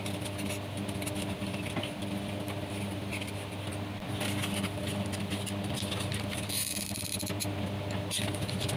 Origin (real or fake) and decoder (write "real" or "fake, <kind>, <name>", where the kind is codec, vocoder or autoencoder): real